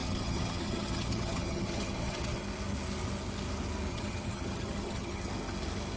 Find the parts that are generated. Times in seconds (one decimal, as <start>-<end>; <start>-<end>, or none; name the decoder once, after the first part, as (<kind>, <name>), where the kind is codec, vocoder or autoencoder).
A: 0.0-2.4 (vocoder, HiFi-GAN); 3.9-5.3